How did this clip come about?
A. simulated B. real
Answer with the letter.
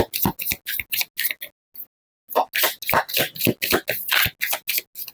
B